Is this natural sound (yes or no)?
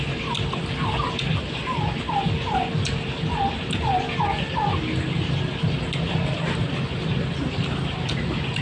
yes